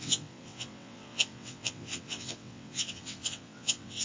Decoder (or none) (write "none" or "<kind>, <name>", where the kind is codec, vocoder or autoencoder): vocoder, WaveNeXt